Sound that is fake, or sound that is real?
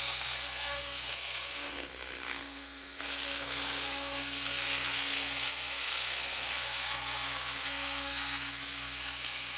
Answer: fake